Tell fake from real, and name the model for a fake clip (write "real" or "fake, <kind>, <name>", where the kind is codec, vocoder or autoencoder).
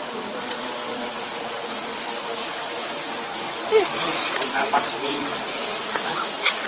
fake, vocoder, Vocos